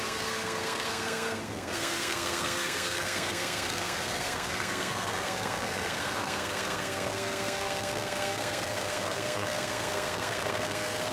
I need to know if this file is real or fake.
fake